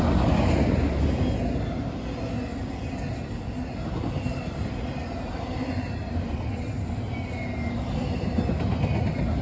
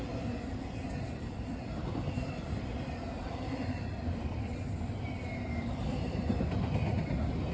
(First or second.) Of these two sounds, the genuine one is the first